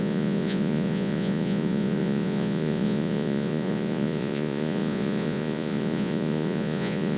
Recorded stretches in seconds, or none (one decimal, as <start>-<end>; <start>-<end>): none